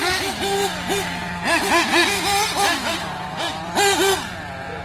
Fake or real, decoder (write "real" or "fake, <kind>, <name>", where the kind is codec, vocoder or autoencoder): fake, vocoder, BigVGAN v2